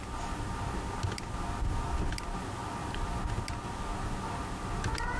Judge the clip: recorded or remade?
recorded